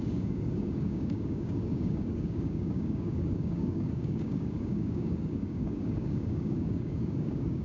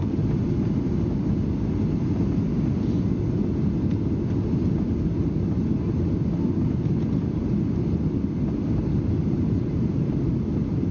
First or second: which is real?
second